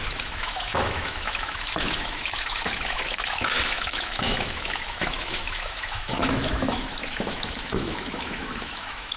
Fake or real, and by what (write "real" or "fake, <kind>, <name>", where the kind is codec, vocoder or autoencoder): fake, autoencoder, DAC-VAE